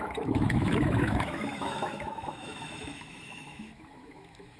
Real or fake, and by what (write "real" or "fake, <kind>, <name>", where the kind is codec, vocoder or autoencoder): fake, autoencoder, DAC-VAE